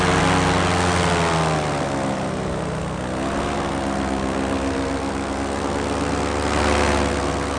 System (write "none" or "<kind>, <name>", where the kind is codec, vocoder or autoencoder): none